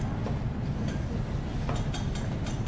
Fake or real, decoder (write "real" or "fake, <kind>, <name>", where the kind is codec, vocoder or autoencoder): real